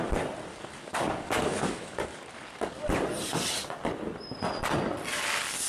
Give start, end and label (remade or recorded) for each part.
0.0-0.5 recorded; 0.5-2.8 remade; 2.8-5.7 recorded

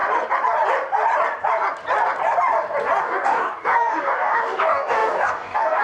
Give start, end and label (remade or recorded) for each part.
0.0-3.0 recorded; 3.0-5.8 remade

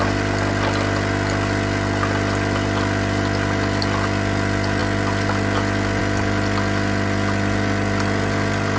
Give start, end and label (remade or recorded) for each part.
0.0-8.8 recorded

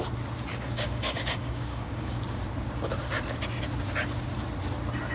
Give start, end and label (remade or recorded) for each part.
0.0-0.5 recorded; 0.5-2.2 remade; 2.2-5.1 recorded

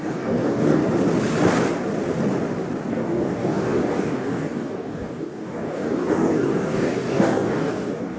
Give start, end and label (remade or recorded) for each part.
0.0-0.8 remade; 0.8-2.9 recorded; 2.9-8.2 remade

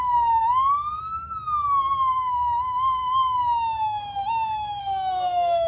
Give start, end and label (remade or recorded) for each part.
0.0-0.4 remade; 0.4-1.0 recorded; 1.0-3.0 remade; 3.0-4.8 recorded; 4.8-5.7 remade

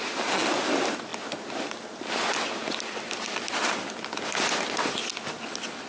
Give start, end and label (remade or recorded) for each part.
0.0-5.9 recorded